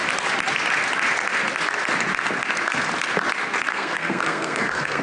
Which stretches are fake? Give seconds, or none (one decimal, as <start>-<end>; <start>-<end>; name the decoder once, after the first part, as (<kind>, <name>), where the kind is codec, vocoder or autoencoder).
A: 3.7-5.0 (codec, SNAC)